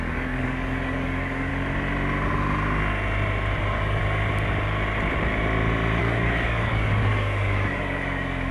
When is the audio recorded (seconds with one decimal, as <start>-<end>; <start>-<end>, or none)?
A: 1.5-3.6; 4.0-6.0